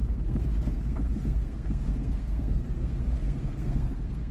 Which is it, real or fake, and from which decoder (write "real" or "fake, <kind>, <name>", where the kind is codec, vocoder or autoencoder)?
fake, codec, SNAC